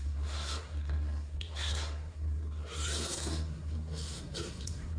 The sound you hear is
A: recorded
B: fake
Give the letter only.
B